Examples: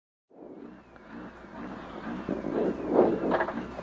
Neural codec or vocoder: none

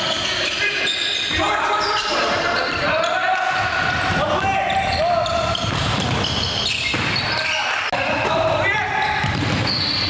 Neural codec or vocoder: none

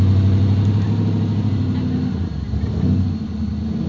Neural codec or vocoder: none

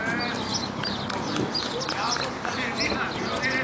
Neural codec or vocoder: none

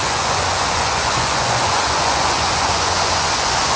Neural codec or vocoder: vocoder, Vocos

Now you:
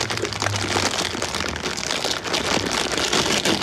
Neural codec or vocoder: none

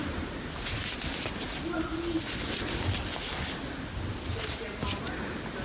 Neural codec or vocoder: none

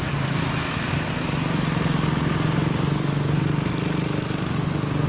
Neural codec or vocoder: none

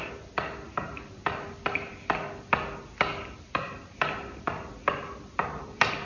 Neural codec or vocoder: none